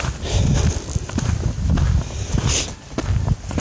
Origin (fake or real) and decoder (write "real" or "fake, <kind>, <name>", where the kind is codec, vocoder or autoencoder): real